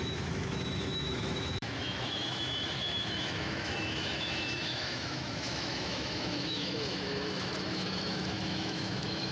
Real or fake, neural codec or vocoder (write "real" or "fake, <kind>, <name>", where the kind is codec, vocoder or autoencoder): fake, autoencoder, DAC-VAE